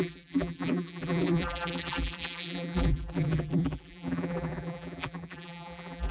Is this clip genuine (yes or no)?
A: no